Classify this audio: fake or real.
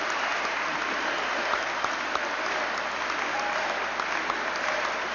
real